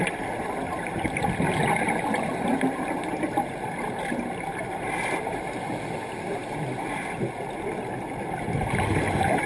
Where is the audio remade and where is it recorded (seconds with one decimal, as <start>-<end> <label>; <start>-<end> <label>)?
0.0-9.5 recorded